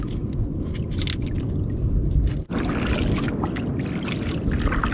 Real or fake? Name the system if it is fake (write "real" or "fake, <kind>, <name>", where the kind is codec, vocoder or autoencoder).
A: real